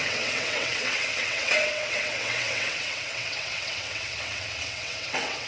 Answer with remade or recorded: remade